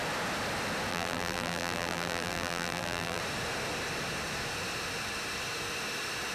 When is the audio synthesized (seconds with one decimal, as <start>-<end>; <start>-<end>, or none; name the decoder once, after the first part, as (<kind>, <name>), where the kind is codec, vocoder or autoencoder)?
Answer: 0.9-3.2 (vocoder, BigVGAN v2)